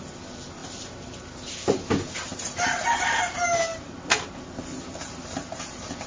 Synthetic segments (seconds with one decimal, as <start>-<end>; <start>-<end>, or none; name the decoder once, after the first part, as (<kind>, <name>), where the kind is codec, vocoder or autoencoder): none